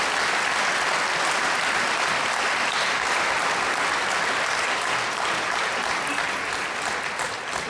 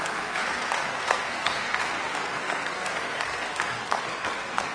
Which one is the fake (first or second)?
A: second